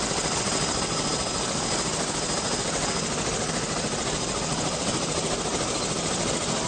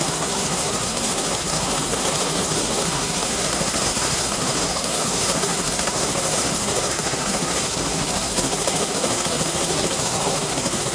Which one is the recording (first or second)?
first